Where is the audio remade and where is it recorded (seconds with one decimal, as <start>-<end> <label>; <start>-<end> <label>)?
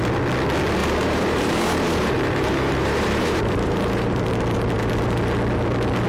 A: 0.0-0.8 recorded; 0.8-4.3 remade; 4.3-6.1 recorded